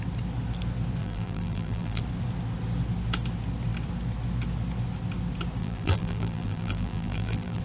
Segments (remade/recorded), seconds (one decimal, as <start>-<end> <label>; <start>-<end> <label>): 0.0-1.0 recorded; 1.0-2.0 remade; 2.0-5.6 recorded; 5.6-7.6 remade